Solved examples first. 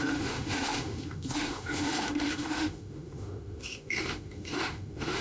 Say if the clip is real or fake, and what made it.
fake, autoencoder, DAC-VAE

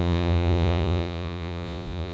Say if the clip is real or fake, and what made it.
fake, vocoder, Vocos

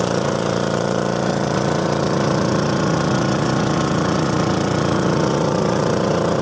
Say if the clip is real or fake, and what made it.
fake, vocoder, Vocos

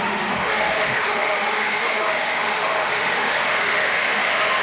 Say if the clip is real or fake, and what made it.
fake, autoencoder, DAC-VAE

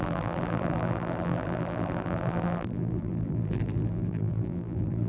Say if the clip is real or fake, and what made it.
fake, vocoder, BigVGAN v2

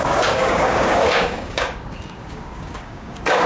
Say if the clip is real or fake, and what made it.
fake, codec, DAC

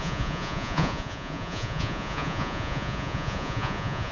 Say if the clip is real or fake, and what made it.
fake, vocoder, Vocos